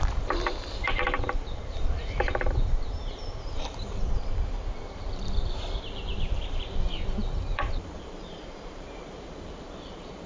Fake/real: fake